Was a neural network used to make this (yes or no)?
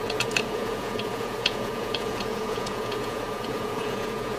yes